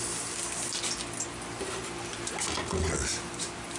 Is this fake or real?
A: real